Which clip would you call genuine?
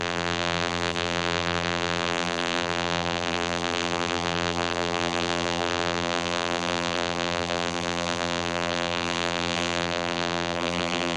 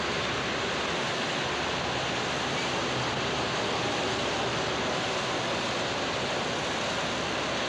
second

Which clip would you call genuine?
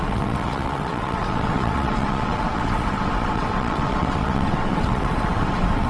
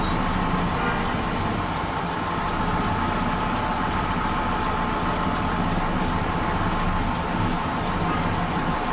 second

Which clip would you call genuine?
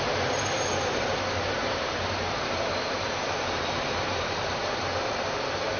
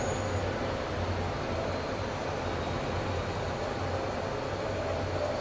second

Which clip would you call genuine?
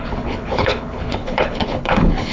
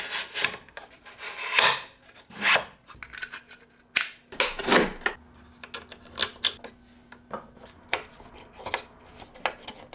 second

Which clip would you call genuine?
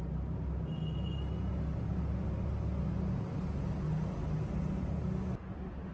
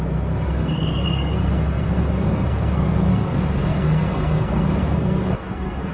first